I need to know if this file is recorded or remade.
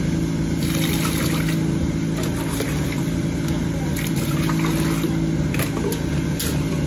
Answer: recorded